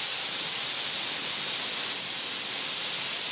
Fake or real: real